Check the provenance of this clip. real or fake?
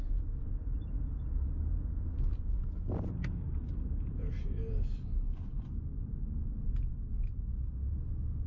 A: real